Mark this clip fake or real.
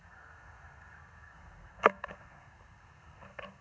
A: fake